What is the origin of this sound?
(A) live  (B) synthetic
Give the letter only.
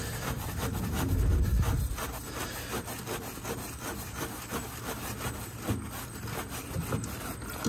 A